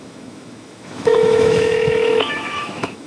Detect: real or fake fake